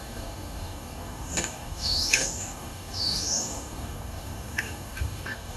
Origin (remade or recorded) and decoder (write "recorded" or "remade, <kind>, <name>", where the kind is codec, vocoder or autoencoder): remade, codec, DAC